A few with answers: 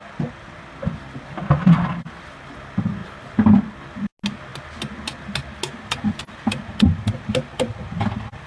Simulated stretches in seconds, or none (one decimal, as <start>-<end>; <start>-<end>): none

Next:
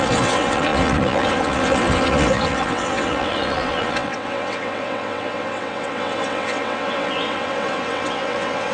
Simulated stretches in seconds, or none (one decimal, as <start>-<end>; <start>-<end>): 0.0-8.7

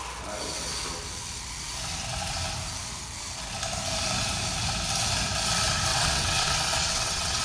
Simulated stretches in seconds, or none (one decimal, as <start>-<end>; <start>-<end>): 5.9-7.4

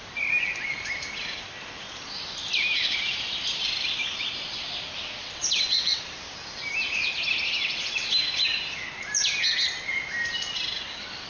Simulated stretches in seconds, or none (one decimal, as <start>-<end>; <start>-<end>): 5.2-6.0

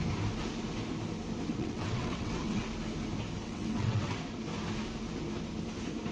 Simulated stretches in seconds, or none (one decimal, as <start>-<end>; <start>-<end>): 1.5-2.6; 3.4-4.2

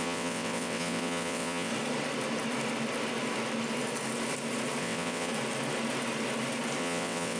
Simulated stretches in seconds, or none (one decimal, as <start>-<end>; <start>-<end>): 0.0-1.7; 4.8-5.3; 6.8-7.4

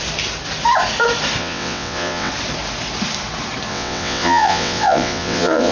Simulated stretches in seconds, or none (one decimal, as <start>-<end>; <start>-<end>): 1.4-2.3; 3.7-5.7

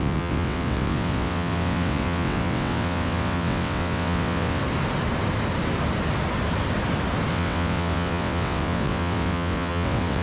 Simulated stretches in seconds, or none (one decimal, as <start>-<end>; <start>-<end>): 0.0-4.6; 7.3-10.2